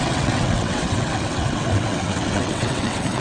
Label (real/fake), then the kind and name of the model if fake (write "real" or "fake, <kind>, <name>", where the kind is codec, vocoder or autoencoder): fake, vocoder, WaveNeXt